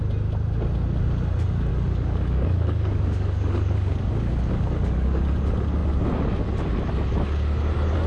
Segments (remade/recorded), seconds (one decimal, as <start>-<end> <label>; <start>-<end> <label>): 0.0-1.7 recorded; 1.7-5.2 remade; 5.2-8.1 recorded